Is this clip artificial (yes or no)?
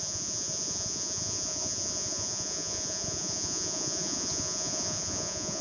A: yes